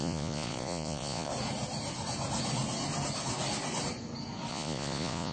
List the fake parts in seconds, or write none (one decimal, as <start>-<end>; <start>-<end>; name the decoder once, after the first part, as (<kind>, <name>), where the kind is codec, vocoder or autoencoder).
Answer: 0.0-1.3 (vocoder, Vocos); 4.5-5.3